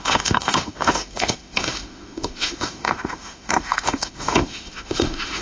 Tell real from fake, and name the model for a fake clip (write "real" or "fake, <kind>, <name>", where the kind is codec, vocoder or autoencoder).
fake, autoencoder, DAC-VAE